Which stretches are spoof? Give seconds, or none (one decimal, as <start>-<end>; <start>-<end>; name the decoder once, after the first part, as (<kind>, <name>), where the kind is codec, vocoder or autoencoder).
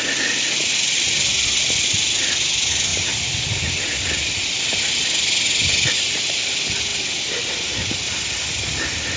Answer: none